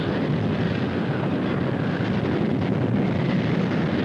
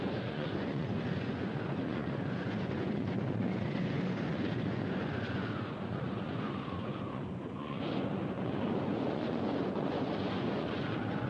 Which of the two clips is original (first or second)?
first